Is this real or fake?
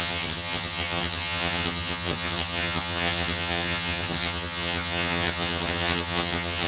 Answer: fake